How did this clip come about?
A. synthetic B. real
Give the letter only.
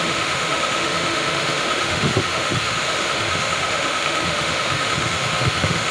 A